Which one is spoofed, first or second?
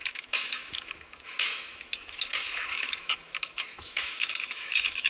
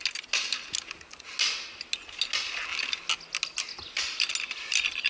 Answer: first